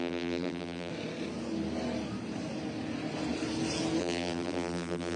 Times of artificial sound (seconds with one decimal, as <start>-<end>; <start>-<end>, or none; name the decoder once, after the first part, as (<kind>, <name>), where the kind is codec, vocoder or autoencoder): 0.0-0.9 (vocoder, BigVGAN v2); 4.0-5.2